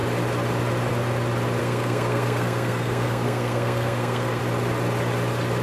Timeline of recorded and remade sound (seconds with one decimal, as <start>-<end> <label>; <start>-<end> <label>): 0.0-1.6 recorded; 1.6-4.4 remade; 4.4-5.6 recorded